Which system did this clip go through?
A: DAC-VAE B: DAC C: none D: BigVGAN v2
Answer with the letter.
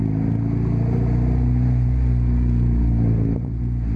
C